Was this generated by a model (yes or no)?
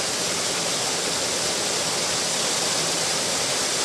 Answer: no